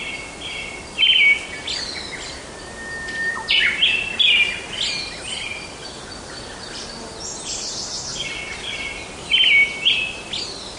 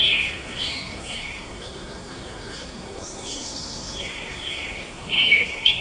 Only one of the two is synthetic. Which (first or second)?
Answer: second